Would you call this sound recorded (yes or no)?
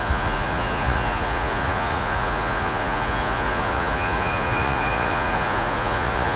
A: no